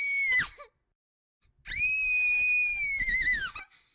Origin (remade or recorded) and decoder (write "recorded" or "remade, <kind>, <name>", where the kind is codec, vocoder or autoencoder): recorded